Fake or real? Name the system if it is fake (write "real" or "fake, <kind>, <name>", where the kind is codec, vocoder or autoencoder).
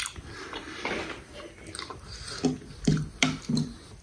real